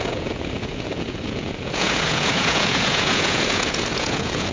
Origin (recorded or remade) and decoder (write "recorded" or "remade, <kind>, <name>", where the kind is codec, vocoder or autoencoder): remade, vocoder, Vocos